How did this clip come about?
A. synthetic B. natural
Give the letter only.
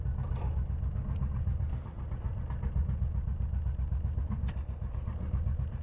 B